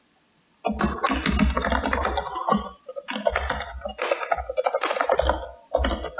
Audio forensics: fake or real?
real